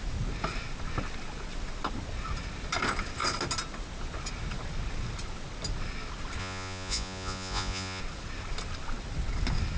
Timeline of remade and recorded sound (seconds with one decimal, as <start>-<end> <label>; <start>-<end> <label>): 0.0-6.4 recorded; 6.4-8.0 remade; 8.0-9.8 recorded